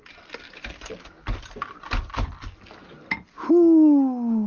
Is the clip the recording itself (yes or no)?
yes